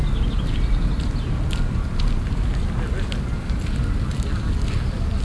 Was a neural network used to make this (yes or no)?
no